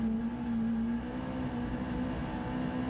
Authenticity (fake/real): real